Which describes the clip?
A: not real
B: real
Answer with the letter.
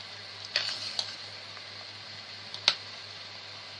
B